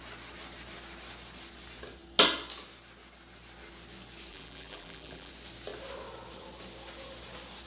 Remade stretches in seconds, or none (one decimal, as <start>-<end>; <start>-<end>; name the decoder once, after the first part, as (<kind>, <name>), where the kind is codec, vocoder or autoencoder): 4.3-5.3 (vocoder, BigVGAN v2)